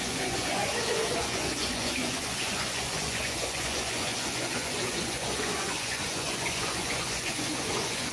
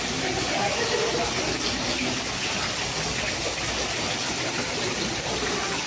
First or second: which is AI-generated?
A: first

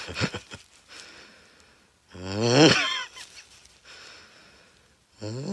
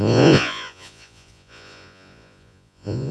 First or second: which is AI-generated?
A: second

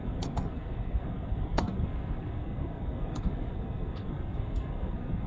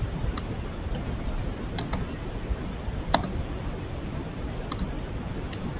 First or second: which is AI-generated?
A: first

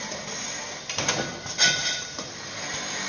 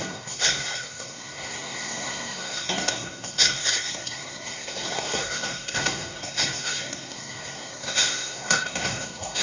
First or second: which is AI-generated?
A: second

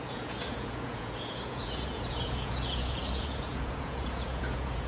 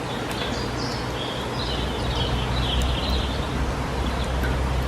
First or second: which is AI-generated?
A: first